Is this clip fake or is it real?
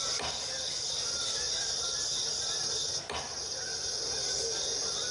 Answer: real